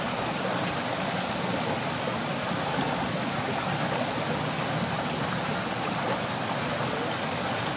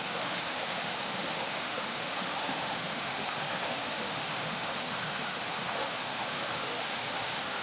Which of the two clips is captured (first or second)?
first